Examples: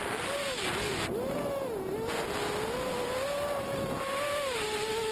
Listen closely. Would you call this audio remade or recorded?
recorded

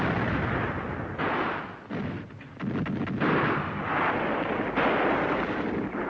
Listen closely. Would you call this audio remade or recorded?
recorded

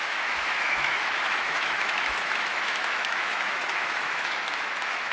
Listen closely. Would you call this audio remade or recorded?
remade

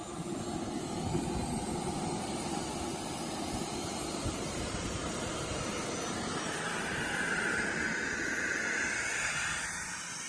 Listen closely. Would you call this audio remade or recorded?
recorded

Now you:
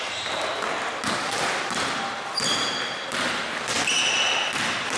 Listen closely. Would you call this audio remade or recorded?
recorded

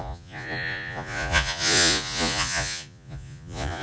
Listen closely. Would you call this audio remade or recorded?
remade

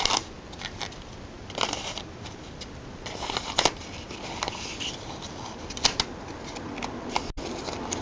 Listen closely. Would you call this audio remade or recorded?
recorded